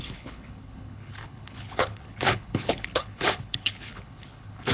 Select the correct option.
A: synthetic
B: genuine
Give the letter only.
A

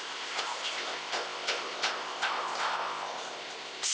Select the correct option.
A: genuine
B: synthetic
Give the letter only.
B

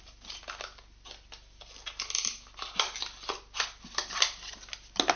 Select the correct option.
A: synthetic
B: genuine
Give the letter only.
B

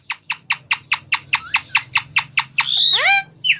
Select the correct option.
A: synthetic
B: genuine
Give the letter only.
B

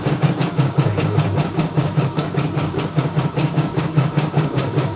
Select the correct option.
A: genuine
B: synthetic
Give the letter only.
B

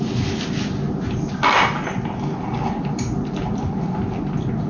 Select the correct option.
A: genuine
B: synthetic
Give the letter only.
A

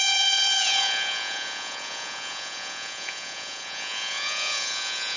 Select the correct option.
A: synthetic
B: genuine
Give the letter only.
A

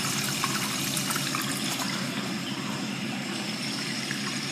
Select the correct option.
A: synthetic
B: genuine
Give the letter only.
B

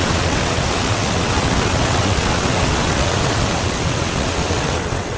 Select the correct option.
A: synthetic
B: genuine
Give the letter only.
A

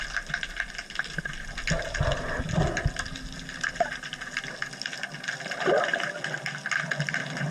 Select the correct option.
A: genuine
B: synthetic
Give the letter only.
A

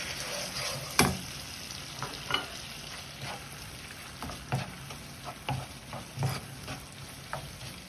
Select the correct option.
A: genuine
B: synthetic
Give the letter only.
A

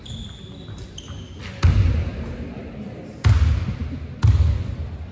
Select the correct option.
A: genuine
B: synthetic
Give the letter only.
A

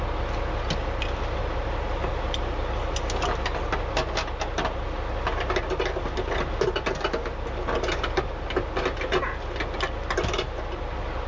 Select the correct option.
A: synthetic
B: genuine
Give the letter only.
B